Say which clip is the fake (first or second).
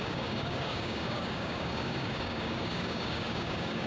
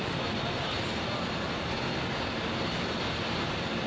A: first